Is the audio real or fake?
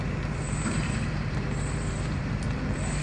fake